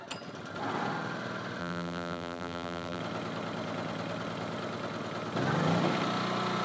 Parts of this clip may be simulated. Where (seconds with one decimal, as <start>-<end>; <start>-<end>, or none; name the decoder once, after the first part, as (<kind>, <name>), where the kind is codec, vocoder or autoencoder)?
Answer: 1.6-3.0 (vocoder, BigVGAN v2)